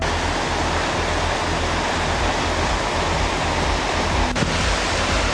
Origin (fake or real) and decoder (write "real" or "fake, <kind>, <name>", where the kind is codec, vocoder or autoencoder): real